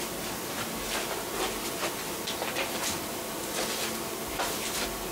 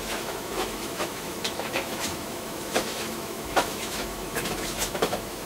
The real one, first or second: first